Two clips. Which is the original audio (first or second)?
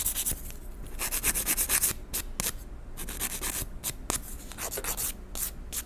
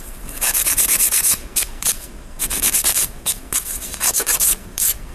first